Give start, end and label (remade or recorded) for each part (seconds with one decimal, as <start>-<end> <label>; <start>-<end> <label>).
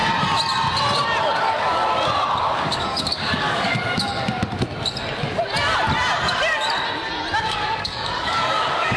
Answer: 0.0-1.2 recorded; 1.2-1.8 remade; 1.8-2.4 recorded; 2.4-4.1 remade; 4.1-7.4 recorded; 7.4-9.0 remade